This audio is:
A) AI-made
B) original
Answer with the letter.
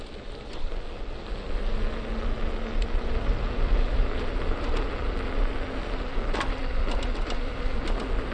B